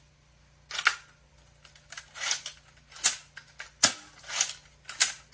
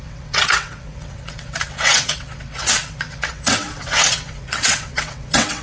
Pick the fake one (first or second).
second